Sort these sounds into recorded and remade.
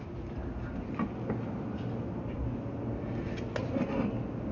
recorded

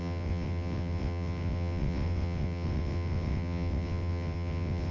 remade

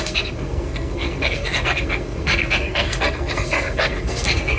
remade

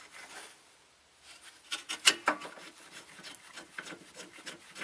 recorded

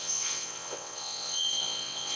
remade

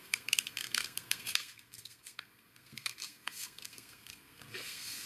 remade